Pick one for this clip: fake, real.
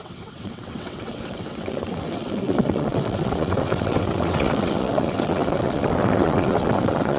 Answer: fake